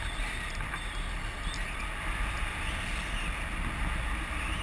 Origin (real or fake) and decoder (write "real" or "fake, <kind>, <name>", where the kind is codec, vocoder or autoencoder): real